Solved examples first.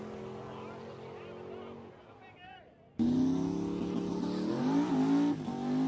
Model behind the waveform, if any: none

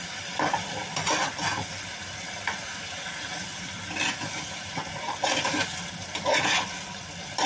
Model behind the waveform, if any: none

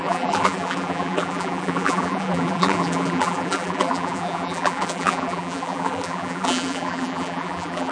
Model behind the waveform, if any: vocoder, BigVGAN v2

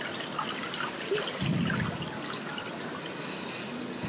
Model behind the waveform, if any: none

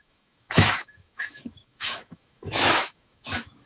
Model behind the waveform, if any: autoencoder, DAC-VAE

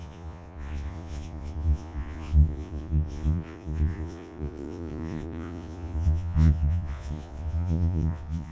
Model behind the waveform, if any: vocoder, Vocos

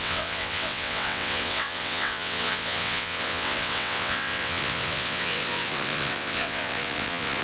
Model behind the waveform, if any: vocoder, WaveNeXt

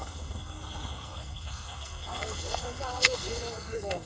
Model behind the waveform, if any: codec, SNAC